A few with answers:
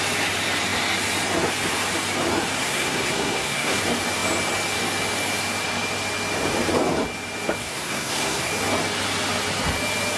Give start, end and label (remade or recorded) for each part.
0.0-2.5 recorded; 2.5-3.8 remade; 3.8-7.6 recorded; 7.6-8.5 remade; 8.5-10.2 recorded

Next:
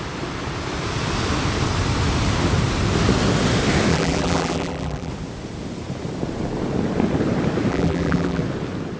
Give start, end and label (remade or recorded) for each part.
0.0-3.9 recorded; 3.9-5.1 remade; 5.1-7.7 recorded; 7.7-8.4 remade; 8.4-9.0 recorded